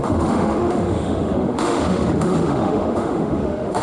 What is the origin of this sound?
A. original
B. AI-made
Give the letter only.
B